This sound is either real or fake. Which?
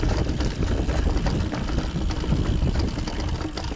real